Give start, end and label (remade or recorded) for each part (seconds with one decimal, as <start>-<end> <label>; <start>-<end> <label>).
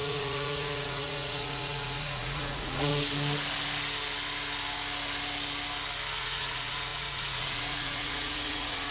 0.0-2.9 remade; 2.9-6.2 recorded; 6.2-8.9 remade